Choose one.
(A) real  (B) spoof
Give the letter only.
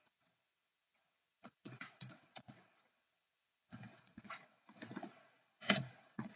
B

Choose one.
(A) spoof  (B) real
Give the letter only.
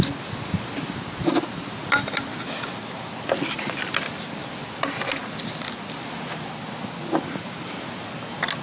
B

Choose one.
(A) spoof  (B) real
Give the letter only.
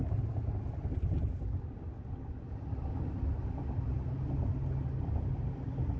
B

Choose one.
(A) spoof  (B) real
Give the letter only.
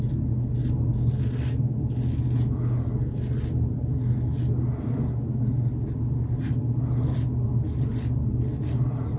B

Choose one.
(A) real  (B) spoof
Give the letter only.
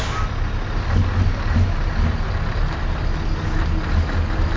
A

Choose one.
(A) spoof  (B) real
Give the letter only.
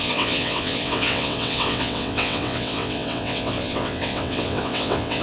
A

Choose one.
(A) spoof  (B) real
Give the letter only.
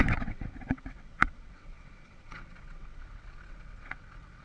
A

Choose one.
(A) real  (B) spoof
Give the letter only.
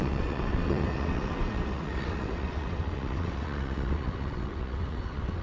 B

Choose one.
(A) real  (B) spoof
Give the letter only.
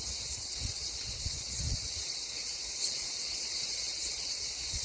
B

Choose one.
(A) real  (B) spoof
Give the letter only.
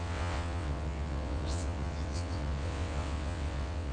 B